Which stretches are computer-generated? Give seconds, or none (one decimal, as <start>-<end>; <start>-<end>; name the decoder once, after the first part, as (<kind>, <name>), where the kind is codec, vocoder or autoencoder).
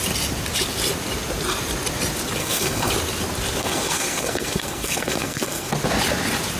2.4-2.9 (codec, SNAC); 3.6-5.7